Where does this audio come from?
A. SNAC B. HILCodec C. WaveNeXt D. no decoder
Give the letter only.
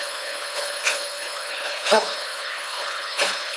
B